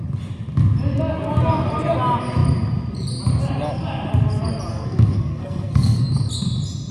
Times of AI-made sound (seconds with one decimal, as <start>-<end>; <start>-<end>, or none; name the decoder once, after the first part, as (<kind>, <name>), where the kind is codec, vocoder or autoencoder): 4.7-6.1 (codec, SNAC)